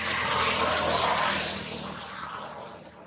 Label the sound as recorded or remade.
recorded